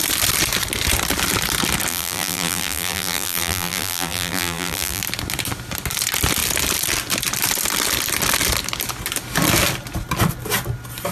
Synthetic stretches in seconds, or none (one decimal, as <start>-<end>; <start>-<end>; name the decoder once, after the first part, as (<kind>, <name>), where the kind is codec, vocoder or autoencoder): 1.9-5.0 (vocoder, BigVGAN v2)